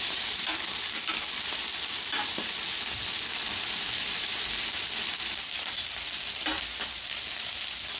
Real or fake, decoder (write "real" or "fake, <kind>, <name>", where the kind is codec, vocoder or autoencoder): fake, vocoder, BigVGAN v2